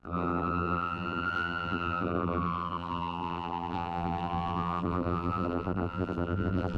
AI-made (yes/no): yes